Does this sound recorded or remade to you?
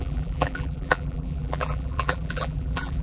remade